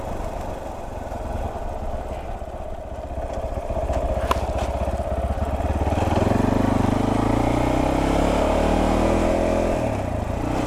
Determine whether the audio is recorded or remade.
recorded